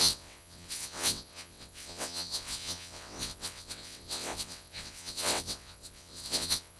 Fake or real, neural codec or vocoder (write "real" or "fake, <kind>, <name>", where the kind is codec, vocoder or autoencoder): fake, vocoder, WaveNeXt